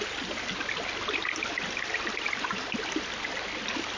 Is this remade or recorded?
remade